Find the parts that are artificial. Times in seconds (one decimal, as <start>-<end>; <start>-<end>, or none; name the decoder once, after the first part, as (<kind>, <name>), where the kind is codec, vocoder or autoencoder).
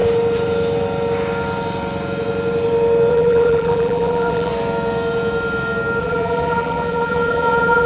3.1-4.5 (vocoder, BigVGAN v2); 6.0-7.9